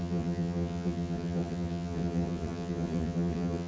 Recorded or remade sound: remade